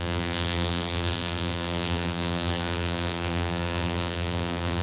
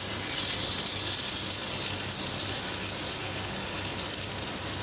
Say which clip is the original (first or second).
second